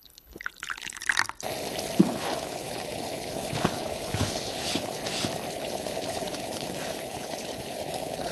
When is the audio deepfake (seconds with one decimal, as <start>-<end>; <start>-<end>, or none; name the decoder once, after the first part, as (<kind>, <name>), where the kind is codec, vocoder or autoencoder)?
0.0-1.0 (codec, HILCodec); 2.0-5.0; 5.5-8.3